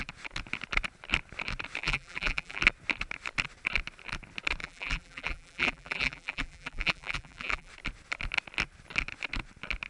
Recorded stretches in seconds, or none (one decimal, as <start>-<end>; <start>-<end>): 0.0-1.8; 2.6-4.6; 7.7-9.9